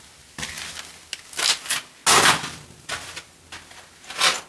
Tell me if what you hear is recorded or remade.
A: recorded